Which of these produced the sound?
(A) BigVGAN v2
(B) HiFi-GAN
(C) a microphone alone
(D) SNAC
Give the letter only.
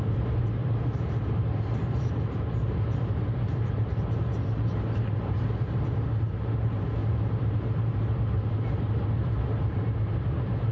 A